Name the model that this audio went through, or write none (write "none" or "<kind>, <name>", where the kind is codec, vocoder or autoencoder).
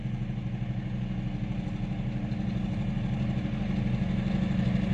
none